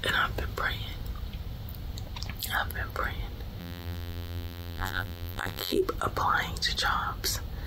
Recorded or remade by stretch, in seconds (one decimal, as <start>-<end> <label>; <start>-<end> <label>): 0.0-3.6 recorded; 3.6-5.8 remade; 5.8-7.7 recorded